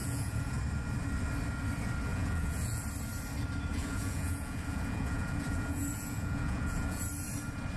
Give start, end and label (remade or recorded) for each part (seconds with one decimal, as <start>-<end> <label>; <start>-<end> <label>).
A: 0.0-0.6 remade; 0.6-2.1 recorded; 2.1-2.8 remade; 2.8-3.7 recorded; 3.7-7.1 remade; 7.1-7.8 recorded